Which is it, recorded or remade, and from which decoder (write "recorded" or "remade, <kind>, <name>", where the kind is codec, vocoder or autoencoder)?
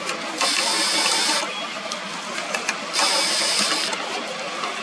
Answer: recorded